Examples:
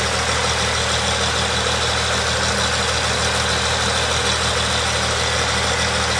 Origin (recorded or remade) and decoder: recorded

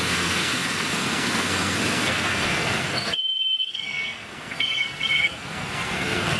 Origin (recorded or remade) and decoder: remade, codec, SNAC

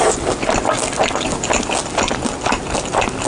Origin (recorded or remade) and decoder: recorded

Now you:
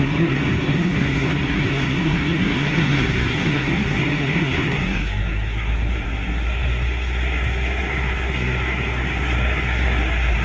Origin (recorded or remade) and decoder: remade, codec, SNAC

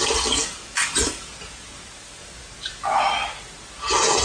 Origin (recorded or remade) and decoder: recorded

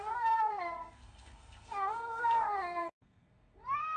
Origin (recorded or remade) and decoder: remade, codec, SNAC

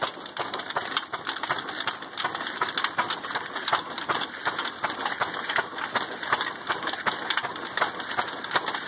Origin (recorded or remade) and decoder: recorded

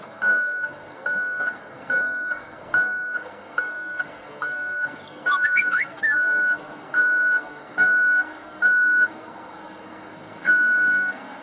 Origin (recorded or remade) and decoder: remade, codec, SNAC